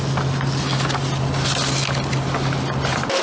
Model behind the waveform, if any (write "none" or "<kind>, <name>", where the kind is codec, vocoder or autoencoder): none